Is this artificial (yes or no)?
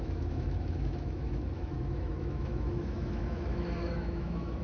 yes